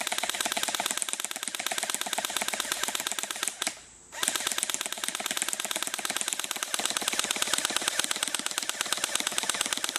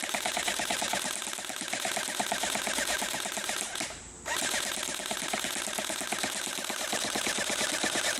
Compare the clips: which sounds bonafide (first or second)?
first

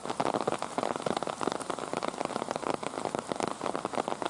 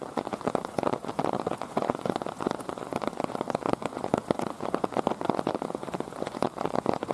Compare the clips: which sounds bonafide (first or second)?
first